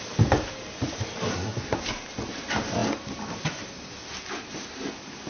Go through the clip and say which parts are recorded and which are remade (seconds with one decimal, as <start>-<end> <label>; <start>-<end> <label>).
0.0-1.3 recorded; 1.3-1.8 remade; 1.8-5.3 recorded